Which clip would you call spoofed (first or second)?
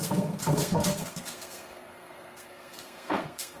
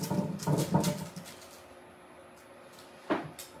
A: first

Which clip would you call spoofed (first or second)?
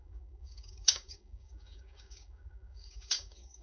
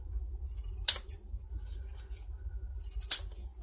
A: first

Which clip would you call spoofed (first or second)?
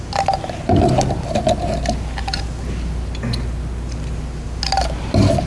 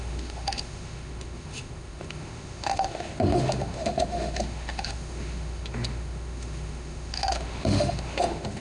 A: second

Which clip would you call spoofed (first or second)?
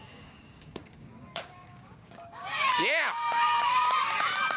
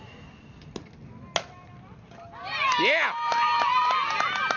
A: first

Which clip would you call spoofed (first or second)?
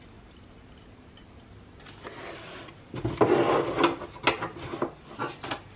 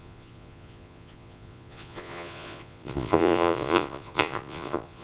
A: second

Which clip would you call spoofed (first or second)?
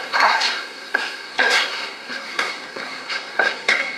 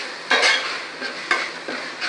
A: first